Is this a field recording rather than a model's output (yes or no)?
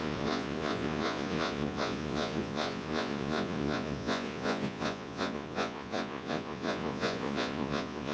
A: no